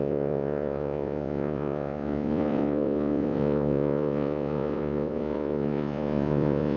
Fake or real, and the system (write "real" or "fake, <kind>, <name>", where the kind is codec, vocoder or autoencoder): fake, vocoder, Vocos